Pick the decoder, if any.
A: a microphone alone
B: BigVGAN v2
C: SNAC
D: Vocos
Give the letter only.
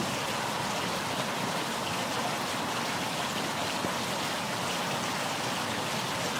A